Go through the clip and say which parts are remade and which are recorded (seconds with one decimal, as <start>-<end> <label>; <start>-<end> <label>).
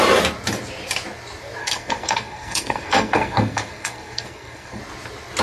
0.0-1.6 recorded; 1.6-4.8 remade; 4.8-5.4 recorded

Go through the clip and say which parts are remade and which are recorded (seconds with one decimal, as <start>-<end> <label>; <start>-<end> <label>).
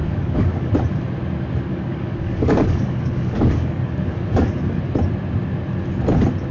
0.0-0.7 remade; 0.7-1.7 recorded; 1.7-4.8 remade; 4.8-6.5 recorded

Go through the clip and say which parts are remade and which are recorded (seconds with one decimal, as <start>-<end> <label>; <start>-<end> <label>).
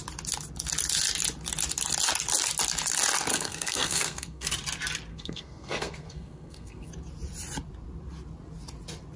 0.0-3.3 recorded; 3.3-4.5 remade; 4.5-5.1 recorded; 5.1-6.9 remade; 6.9-9.2 recorded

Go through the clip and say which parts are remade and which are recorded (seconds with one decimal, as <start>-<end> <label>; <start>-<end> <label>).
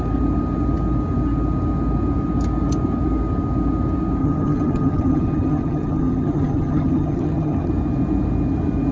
0.0-4.2 recorded; 4.2-7.7 remade; 7.7-8.9 recorded